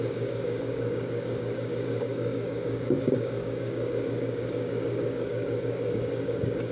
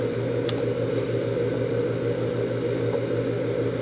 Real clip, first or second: second